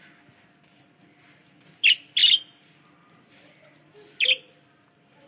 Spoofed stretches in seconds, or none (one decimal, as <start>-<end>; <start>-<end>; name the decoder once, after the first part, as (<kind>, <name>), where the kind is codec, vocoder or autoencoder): none